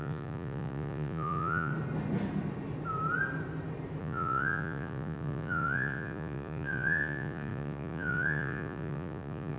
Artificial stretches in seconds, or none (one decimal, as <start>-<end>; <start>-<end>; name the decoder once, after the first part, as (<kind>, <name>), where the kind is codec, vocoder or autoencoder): 0.0-1.7 (vocoder, Vocos); 4.0-9.6